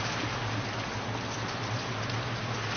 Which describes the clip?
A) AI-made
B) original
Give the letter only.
B